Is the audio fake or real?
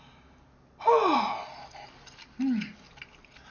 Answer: real